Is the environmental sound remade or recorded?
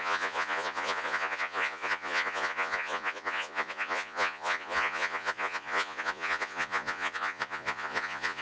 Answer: remade